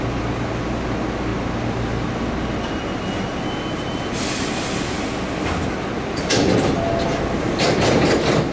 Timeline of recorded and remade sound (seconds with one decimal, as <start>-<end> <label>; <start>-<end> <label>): 0.0-8.5 recorded